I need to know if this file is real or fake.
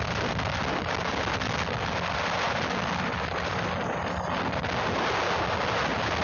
real